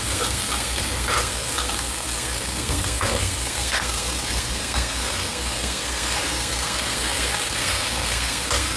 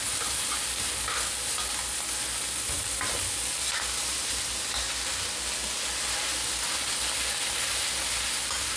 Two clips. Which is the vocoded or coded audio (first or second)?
first